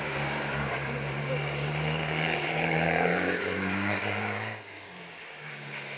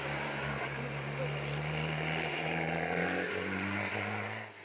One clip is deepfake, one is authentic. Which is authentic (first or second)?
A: second